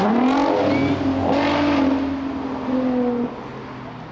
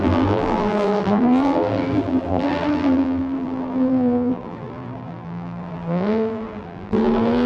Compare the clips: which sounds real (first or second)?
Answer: first